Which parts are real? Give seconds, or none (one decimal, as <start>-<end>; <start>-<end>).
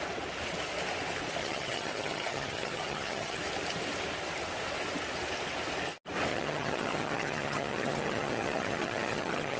0.0-1.4; 3.4-6.3